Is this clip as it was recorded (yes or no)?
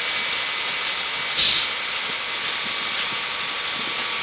yes